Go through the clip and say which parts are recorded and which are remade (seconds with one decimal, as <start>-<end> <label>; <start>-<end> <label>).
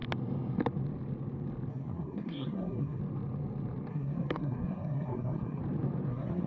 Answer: 0.0-1.7 recorded; 1.7-3.0 remade; 3.0-3.9 recorded; 3.9-5.6 remade; 5.6-6.1 recorded; 6.1-6.5 remade